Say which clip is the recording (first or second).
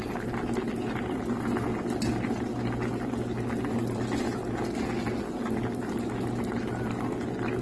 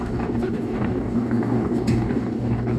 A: first